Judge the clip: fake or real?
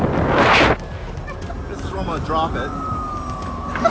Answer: real